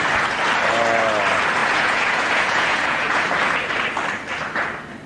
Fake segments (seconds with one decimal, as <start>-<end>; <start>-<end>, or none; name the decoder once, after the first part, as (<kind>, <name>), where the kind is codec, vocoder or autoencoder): 1.6-3.2 (vocoder, Vocos)